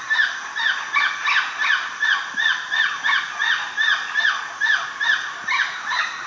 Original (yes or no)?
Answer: yes